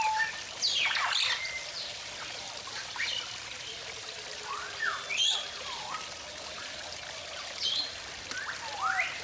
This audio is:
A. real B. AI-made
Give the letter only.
A